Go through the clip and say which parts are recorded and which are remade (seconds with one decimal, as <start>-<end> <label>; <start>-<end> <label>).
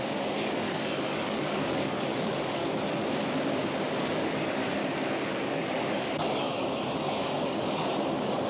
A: 0.0-2.6 remade; 2.6-4.0 recorded; 4.0-4.8 remade; 4.8-5.4 recorded; 5.4-8.5 remade